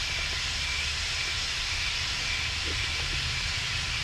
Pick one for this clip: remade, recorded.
recorded